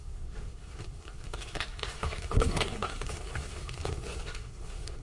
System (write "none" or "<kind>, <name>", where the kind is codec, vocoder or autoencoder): codec, SNAC